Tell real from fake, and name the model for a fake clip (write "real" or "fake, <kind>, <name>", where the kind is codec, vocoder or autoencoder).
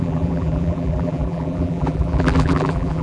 fake, vocoder, BigVGAN v2